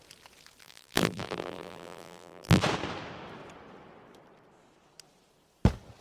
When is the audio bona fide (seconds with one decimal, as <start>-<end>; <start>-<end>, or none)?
0.0-0.6; 2.6-6.0